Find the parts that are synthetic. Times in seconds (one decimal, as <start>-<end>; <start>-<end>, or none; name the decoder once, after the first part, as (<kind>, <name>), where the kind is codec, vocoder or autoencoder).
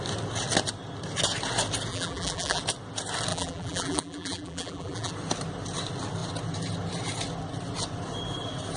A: 1.9-2.6 (vocoder, BigVGAN v2); 3.3-5.1